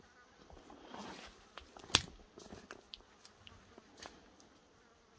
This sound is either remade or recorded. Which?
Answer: recorded